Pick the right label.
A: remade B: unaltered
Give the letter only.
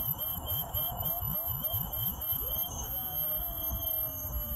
A